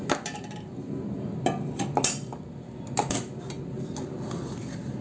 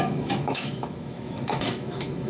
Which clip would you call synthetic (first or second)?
second